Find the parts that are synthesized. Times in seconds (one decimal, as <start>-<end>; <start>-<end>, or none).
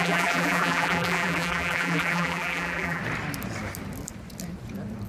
0.0-3.0